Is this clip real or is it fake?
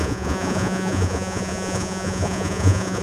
fake